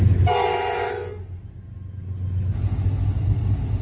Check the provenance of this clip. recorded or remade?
recorded